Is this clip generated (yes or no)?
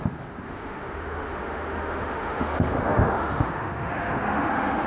yes